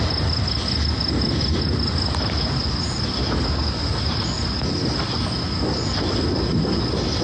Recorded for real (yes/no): yes